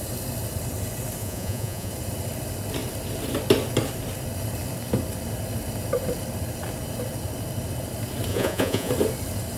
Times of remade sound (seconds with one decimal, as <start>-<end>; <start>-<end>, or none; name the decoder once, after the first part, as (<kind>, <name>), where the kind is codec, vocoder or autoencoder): 1.2-1.9 (vocoder, Vocos); 8.3-8.9